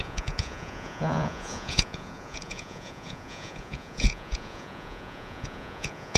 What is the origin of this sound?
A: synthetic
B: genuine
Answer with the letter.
A